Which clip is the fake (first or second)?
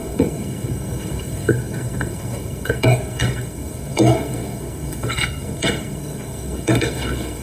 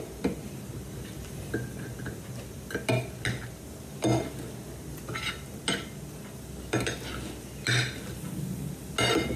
first